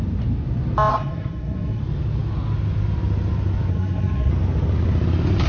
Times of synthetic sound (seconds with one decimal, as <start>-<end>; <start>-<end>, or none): 0.9-1.8; 3.7-4.3